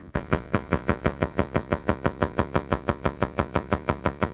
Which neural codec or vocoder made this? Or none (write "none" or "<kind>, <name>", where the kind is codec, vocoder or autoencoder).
vocoder, Vocos